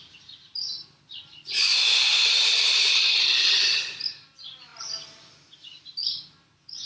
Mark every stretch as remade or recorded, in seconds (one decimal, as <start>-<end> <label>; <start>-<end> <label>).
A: 0.0-6.9 recorded